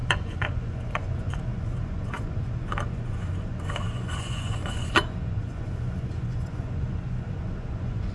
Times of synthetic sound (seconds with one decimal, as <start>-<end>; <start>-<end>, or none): 0.0-8.1